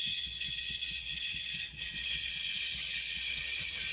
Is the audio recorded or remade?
remade